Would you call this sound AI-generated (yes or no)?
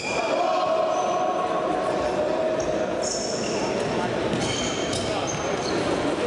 no